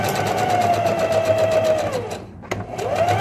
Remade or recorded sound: recorded